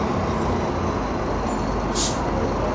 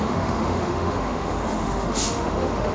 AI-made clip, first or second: second